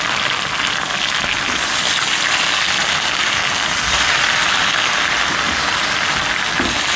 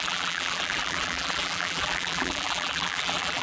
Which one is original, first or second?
first